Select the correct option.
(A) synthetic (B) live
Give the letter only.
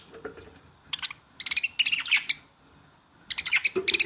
B